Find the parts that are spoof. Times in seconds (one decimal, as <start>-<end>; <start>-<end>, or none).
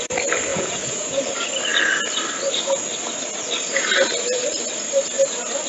0.5-1.2